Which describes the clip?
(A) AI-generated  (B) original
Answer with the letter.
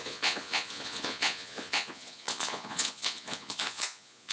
A